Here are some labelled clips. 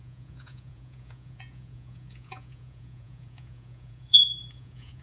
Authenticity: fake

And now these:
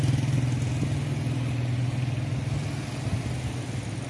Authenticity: real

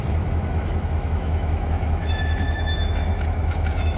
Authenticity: fake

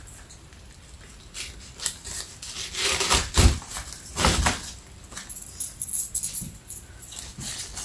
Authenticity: real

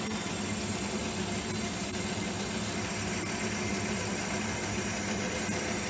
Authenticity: real